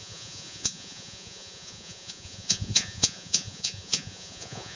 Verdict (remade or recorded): remade